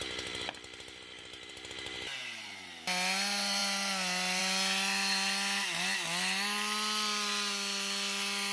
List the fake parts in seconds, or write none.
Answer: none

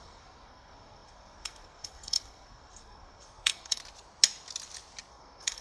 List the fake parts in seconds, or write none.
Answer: 0.0-3.8; 5.1-5.6

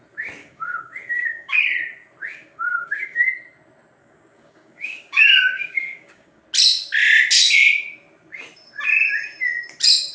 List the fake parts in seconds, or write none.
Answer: 0.4-1.6; 2.2-3.3; 4.0-6.4